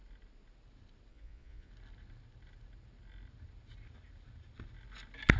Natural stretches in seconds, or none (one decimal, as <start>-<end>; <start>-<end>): 0.0-1.1; 1.7-5.4